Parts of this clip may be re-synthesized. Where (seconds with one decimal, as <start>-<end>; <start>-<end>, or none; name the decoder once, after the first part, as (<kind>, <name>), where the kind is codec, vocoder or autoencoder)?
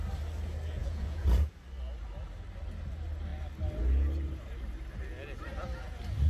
0.8-1.5 (vocoder, Vocos)